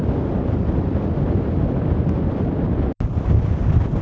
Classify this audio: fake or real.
real